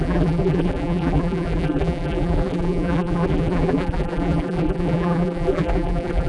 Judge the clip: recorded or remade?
remade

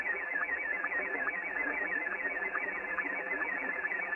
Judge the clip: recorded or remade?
remade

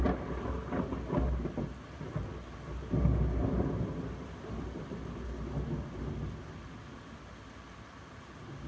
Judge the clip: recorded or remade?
recorded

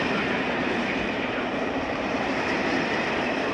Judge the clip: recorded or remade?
remade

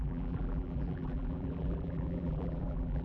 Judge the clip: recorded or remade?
remade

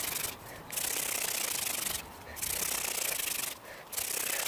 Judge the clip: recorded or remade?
recorded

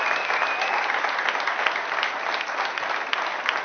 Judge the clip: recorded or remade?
recorded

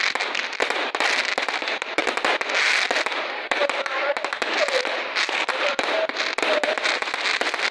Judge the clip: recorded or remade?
recorded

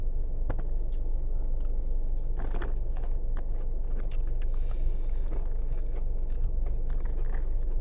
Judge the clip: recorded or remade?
recorded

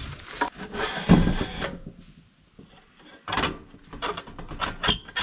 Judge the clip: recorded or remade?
recorded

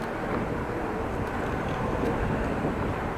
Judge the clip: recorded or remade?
recorded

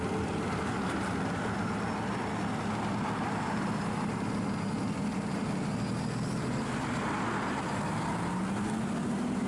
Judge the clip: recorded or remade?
recorded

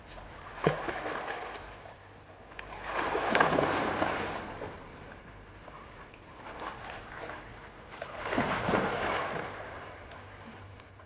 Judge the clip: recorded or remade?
recorded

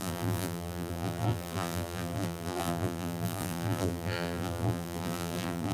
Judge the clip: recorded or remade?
remade